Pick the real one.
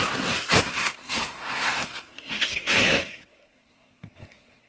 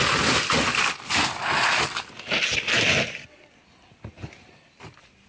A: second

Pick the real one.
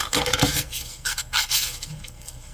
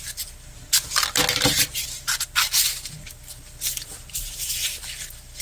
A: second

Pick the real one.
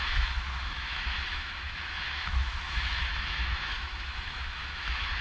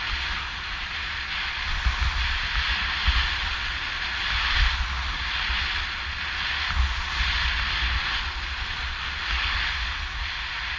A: second